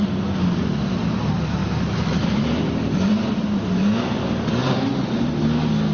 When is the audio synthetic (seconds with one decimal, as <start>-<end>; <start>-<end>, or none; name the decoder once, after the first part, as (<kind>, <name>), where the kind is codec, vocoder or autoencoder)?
1.6-3.3 (vocoder, BigVGAN v2); 4.6-5.3